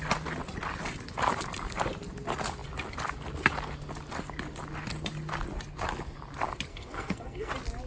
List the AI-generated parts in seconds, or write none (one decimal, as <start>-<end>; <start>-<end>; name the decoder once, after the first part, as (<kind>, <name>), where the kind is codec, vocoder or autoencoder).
6.7-7.5 (codec, SNAC)